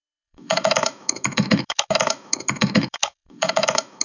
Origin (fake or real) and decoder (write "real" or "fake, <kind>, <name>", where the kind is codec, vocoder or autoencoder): fake, autoencoder, DAC-VAE